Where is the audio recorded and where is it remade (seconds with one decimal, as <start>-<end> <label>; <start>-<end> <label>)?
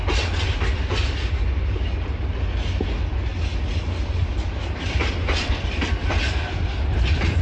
0.0-7.4 recorded